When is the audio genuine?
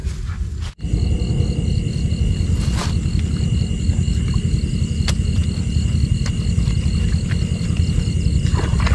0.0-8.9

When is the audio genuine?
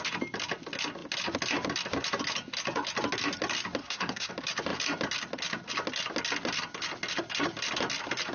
0.0-3.8; 4.3-8.3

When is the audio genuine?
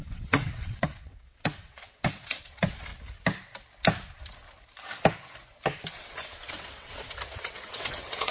2.9-5.9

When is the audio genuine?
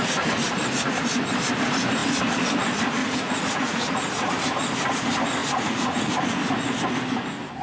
0.0-3.0; 4.3-5.4; 6.1-7.6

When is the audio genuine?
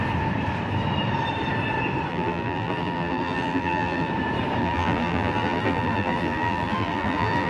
0.0-2.1; 4.1-4.6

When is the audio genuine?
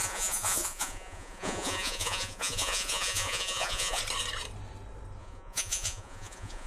4.0-5.2